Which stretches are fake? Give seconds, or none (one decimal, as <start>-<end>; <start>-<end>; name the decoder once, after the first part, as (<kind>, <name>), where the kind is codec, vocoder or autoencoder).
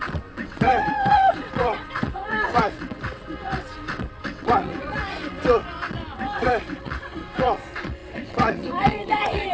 0.0-9.5 (vocoder, WaveNeXt)